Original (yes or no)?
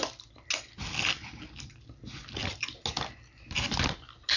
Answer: yes